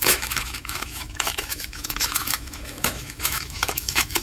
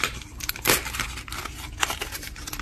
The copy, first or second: first